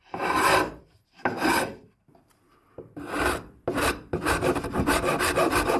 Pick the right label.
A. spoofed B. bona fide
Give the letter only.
A